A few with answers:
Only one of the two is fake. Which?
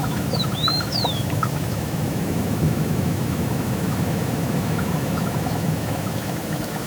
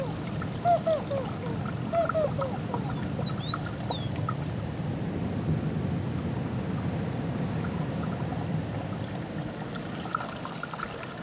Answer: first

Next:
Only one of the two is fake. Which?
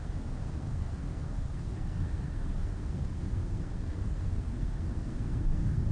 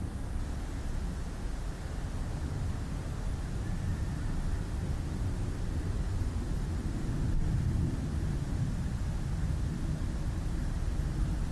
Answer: first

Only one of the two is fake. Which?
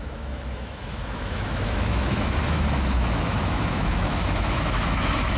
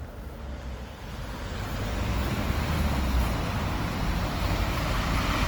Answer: first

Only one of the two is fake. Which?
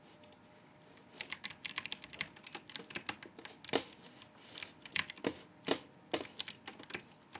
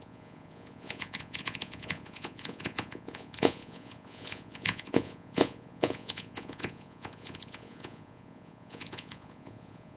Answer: second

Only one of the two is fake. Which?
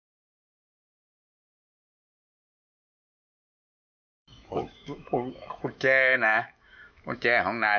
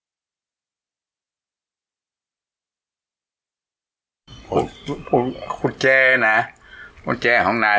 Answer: first